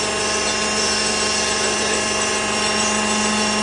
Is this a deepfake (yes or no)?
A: no